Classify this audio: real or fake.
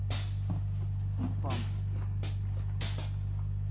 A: real